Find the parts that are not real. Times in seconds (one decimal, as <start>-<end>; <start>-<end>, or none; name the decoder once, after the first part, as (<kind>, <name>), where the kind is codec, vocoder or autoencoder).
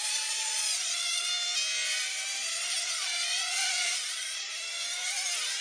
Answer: 0.0-1.3 (vocoder, Vocos); 2.9-4.5